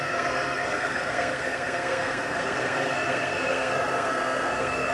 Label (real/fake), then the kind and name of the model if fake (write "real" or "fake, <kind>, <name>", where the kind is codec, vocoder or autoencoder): fake, codec, SNAC